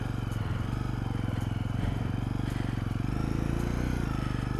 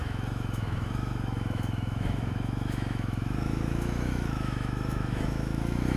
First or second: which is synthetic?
second